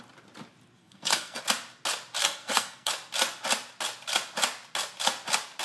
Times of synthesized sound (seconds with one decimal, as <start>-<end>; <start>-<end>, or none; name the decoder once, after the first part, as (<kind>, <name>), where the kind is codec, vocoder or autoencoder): 0.8-1.4 (codec, SNAC); 2.2-2.9